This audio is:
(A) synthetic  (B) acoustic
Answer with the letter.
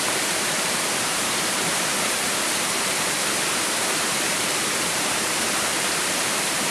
A